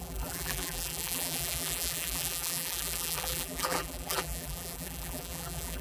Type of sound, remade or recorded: remade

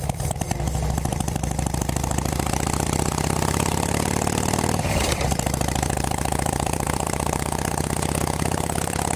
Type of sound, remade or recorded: remade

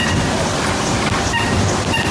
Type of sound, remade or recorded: remade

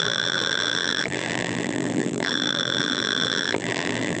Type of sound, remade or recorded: remade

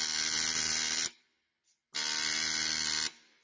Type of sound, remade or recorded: remade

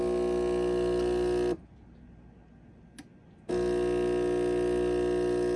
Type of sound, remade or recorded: recorded